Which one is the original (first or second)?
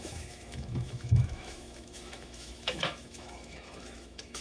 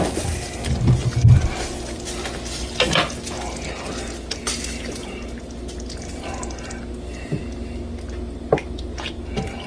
second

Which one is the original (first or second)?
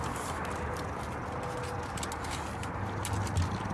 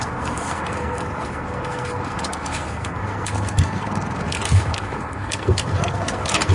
first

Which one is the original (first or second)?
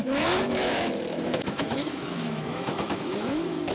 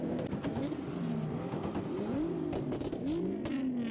second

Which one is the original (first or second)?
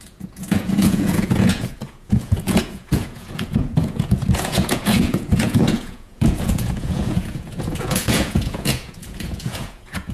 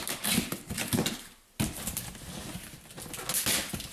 second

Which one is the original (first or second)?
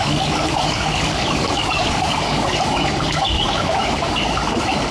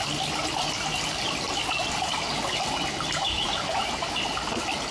second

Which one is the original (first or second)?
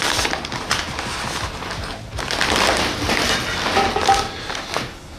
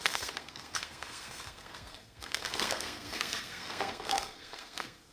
first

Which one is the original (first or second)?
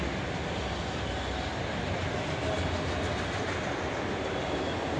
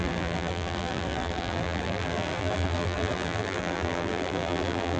first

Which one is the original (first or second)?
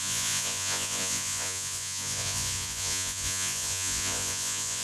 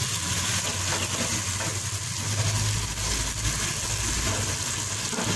second